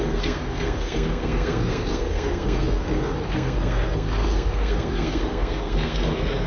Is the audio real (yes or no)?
no